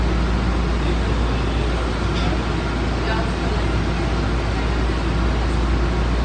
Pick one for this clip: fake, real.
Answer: real